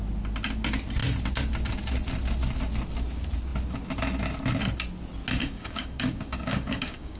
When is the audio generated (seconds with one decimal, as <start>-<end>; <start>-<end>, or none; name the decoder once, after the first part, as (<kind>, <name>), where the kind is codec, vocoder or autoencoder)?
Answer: 5.4-7.2 (codec, DAC)